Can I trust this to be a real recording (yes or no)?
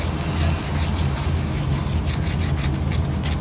yes